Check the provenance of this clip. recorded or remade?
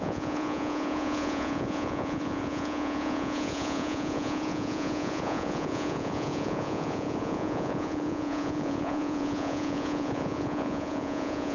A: remade